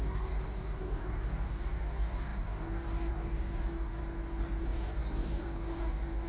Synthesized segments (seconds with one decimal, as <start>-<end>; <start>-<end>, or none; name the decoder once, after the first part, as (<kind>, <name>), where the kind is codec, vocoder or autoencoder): 0.0-4.0 (codec, DAC); 4.6-6.3